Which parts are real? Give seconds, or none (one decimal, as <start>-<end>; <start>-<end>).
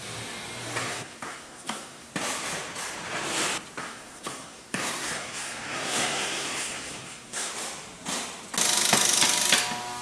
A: 0.0-0.8; 2.1-3.8; 7.5-10.0